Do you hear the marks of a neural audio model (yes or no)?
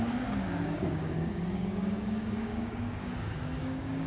yes